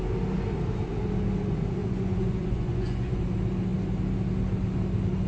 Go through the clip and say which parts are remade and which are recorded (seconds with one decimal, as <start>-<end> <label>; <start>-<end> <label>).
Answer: 0.0-1.8 recorded; 1.8-3.2 remade; 3.2-5.3 recorded